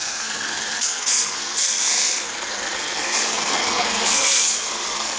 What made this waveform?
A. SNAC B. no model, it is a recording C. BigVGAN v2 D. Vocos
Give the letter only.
A